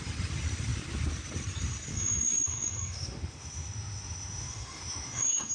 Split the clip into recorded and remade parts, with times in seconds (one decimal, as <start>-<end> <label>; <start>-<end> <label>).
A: 0.0-1.9 recorded; 1.9-5.5 remade